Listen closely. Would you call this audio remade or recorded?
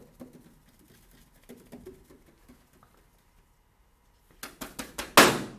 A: recorded